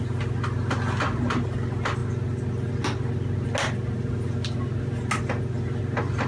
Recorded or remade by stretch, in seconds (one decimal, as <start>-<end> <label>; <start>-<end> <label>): 0.0-6.3 recorded